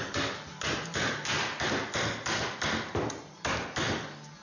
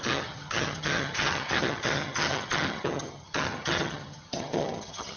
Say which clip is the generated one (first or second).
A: second